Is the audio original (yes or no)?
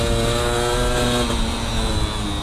yes